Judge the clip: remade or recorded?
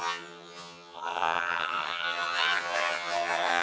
remade